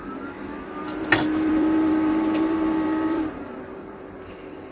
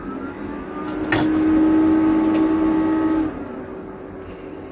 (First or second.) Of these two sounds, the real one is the second